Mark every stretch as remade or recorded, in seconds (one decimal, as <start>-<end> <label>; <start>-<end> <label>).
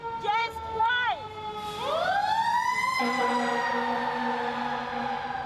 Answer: 0.0-0.4 recorded; 0.4-0.9 remade; 0.9-5.5 recorded